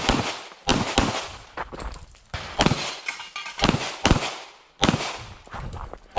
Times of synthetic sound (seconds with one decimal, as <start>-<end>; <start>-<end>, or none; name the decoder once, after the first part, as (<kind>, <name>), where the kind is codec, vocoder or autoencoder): none